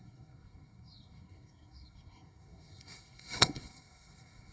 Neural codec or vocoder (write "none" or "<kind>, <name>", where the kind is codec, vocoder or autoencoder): codec, SNAC